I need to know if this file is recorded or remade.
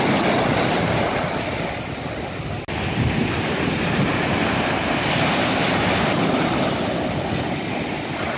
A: recorded